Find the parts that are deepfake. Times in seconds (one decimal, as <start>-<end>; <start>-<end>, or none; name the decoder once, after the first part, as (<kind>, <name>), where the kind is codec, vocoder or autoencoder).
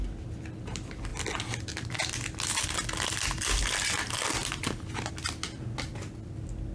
none